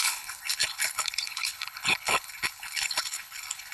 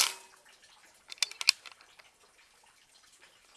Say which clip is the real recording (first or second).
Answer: second